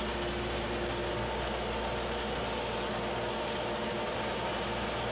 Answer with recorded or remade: recorded